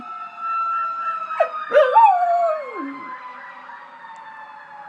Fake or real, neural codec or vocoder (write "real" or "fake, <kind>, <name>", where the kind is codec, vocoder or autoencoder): real